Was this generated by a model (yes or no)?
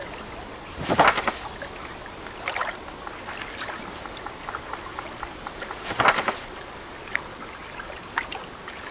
no